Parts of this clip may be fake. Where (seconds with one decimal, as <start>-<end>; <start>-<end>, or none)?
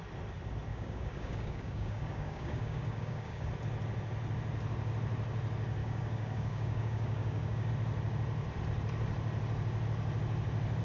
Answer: 0.7-3.5; 5.8-7.7